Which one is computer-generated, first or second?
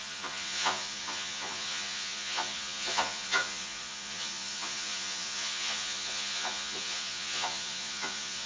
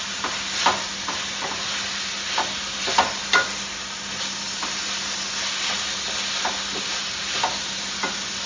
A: first